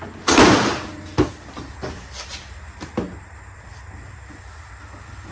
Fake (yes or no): no